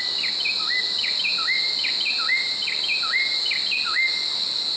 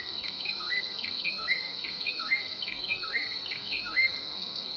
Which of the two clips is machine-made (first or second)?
second